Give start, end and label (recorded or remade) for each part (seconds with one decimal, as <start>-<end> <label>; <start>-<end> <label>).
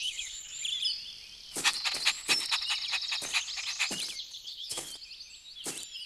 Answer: 0.0-0.5 remade; 0.5-4.2 recorded; 4.2-4.9 remade; 4.9-6.1 recorded